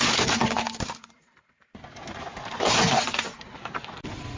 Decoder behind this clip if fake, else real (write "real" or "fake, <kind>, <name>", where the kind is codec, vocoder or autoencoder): real